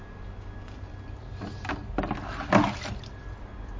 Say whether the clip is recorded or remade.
recorded